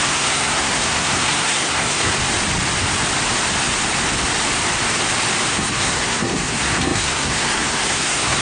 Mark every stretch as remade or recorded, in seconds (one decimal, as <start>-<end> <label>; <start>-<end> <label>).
0.0-2.1 remade; 2.1-5.5 recorded; 5.5-8.4 remade